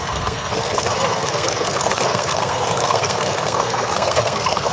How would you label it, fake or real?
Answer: fake